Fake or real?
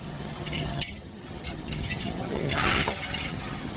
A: fake